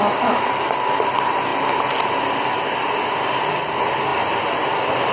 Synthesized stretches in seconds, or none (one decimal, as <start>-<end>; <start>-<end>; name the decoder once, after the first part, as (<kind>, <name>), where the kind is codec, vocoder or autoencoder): none